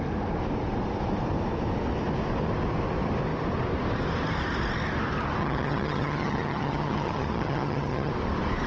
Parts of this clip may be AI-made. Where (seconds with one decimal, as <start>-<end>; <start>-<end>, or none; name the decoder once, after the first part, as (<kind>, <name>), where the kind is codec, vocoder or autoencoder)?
5.4-8.1 (vocoder, HiFi-GAN)